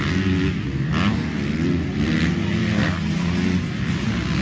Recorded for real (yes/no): yes